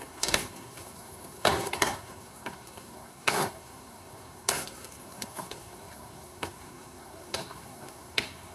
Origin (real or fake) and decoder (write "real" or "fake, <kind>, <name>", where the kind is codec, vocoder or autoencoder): fake, codec, SNAC